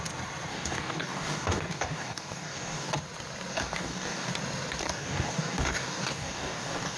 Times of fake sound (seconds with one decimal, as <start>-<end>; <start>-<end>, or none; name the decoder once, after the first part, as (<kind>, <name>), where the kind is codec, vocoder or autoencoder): 0.5-2.9 (codec, DAC); 3.5-4.3; 4.8-7.0